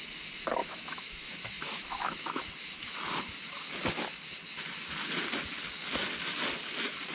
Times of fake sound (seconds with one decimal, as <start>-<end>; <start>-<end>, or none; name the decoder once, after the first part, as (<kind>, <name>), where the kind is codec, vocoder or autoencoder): 0.6-2.5 (autoencoder, DAC-VAE)